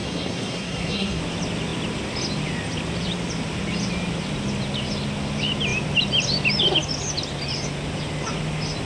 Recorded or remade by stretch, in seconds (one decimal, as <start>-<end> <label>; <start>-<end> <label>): 0.0-1.2 remade; 1.2-8.9 recorded